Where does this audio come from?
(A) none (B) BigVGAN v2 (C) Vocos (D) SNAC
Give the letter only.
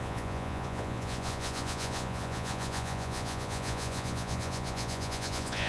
C